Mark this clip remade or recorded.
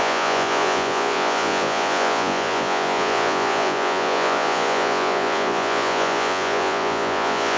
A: remade